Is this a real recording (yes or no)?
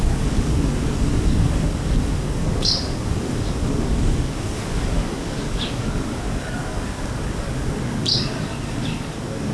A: no